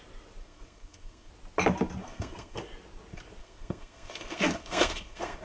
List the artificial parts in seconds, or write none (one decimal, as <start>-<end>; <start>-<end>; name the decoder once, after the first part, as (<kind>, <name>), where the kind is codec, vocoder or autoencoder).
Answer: 0.4-1.3 (codec, SNAC); 2.0-2.6; 3.4-5.4